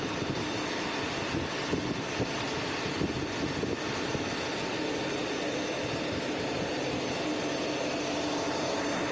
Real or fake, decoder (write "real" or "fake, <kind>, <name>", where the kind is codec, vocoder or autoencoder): real